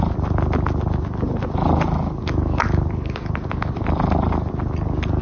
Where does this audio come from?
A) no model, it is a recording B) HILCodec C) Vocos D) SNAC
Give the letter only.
A